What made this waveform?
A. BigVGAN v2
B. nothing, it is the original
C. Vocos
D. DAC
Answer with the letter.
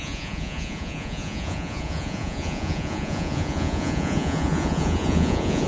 C